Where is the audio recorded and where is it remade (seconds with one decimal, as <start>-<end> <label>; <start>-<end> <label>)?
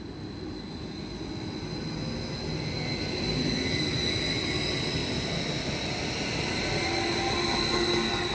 0.0-8.3 recorded